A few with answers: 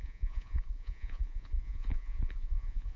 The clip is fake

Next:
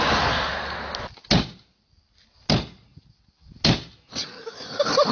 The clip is real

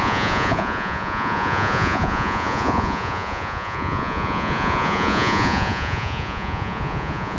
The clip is fake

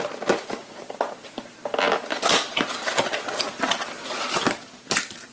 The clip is real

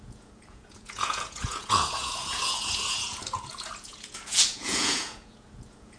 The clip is fake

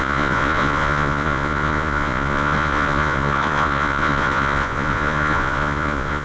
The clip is fake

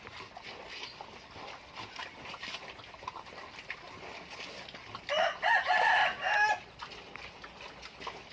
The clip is real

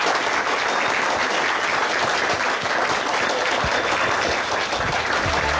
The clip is real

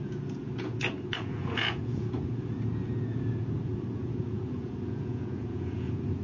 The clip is fake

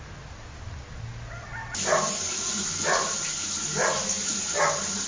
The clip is real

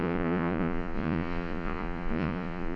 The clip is fake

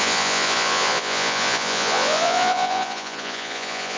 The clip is fake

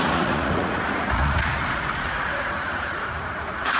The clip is fake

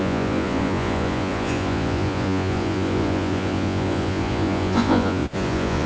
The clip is fake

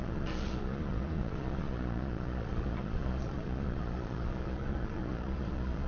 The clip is fake